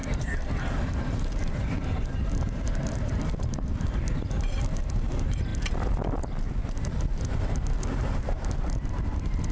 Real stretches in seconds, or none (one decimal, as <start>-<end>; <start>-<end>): 5.5-7.3